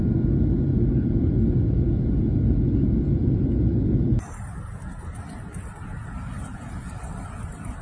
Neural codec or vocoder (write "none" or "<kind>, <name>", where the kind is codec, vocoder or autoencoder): none